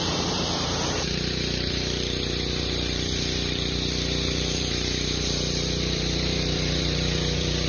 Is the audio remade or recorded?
remade